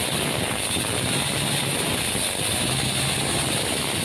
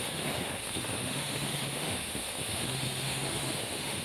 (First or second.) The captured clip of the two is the first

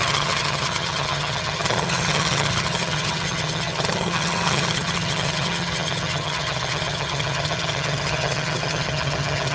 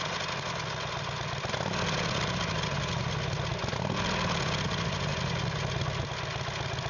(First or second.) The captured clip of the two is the second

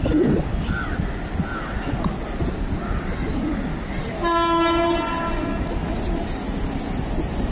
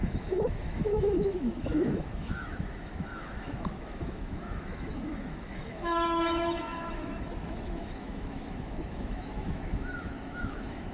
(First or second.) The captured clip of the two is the first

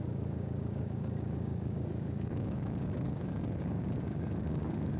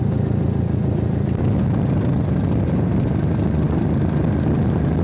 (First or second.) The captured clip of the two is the second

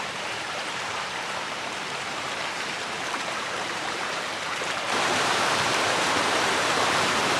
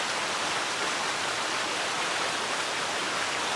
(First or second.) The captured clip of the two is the second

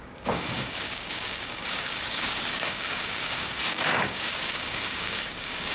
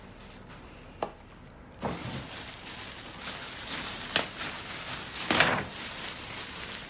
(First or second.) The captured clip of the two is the second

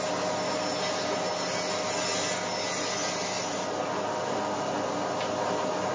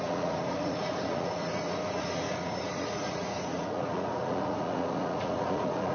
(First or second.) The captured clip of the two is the first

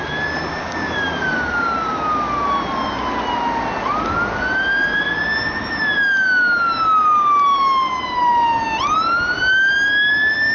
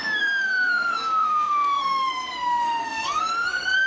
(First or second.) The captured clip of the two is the first